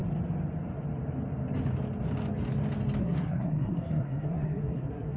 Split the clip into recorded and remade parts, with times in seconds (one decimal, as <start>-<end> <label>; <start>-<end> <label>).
0.0-3.0 recorded; 3.0-5.2 remade